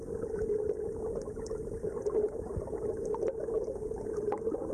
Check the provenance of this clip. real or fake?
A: real